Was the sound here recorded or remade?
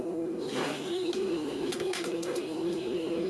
remade